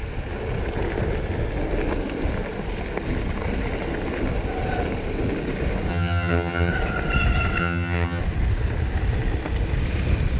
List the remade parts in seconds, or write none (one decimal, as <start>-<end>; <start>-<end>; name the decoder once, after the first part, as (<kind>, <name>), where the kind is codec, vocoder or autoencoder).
5.9-6.7 (vocoder, HiFi-GAN); 7.6-8.2